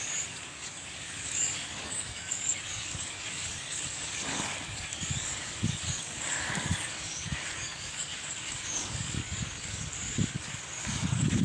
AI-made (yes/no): yes